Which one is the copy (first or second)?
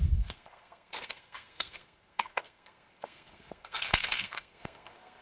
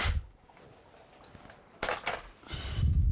first